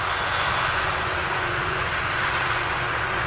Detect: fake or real fake